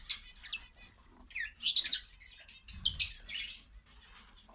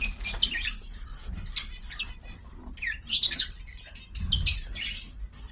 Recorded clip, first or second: first